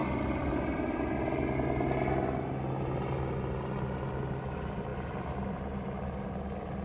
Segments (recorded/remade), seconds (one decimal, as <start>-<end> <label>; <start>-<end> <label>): 0.0-6.8 recorded